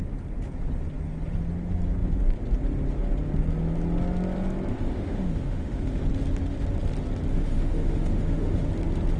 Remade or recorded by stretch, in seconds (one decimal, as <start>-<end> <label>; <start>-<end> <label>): 0.0-4.7 recorded; 4.7-6.0 remade; 6.0-7.3 recorded; 7.3-8.7 remade; 8.7-9.2 recorded